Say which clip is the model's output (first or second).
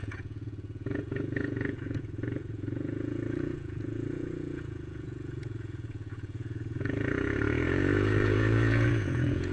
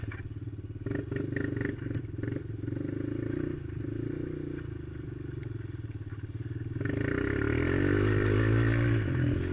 first